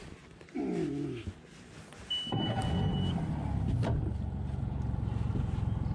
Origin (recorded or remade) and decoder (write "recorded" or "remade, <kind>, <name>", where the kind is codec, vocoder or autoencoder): recorded